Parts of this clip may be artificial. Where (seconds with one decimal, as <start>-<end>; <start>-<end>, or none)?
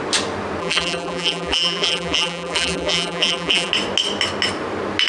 0.6-3.7